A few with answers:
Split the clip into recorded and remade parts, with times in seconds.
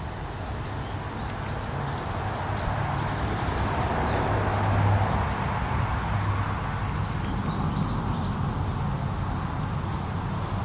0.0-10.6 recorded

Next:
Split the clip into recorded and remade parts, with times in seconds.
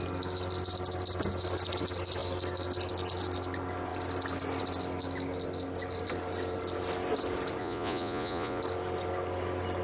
0.0-7.6 recorded; 7.6-8.6 remade; 8.6-9.8 recorded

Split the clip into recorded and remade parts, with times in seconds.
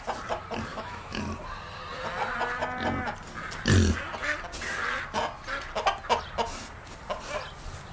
0.0-0.7 recorded; 0.7-1.2 remade; 1.2-7.9 recorded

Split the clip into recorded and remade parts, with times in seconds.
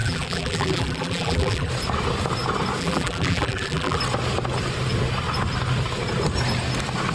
0.0-1.7 remade; 1.7-2.8 recorded; 2.8-4.0 remade; 4.0-7.1 recorded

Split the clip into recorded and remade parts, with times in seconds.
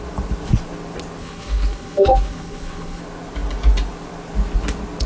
0.0-1.2 recorded; 1.2-3.0 remade; 3.0-5.1 recorded